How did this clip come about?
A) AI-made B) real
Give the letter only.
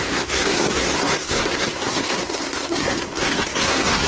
A